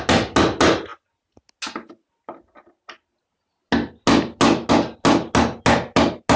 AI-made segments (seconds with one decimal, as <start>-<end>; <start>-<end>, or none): none